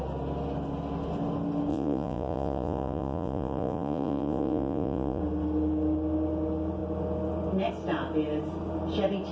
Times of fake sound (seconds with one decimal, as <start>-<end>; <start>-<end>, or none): 1.7-5.2